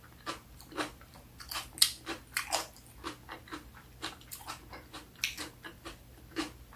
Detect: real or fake real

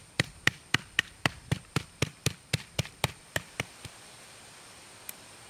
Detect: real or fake fake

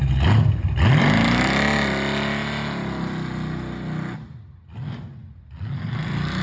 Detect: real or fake real